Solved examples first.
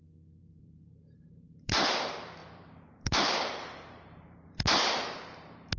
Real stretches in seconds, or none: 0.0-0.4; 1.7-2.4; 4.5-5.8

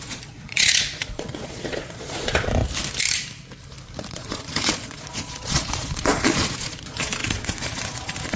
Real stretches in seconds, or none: 2.6-4.1

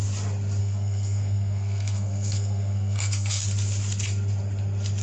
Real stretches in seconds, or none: 0.0-0.6; 3.4-5.0

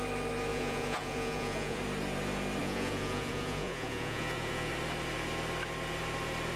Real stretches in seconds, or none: 0.0-0.5; 1.8-2.6; 4.7-6.6